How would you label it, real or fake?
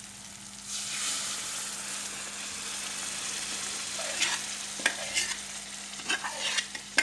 real